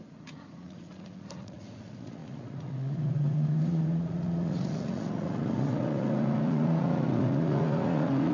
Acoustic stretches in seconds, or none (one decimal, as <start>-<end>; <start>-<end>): none